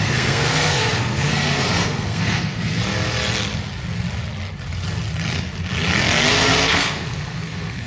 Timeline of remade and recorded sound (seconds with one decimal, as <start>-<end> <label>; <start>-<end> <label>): 0.0-2.8 remade; 2.8-6.3 recorded; 6.3-7.9 remade